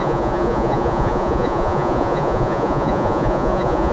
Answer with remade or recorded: remade